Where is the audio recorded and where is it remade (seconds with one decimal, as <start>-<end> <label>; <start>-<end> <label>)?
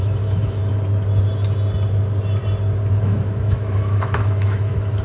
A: 0.0-0.6 remade; 0.6-3.0 recorded; 3.0-5.0 remade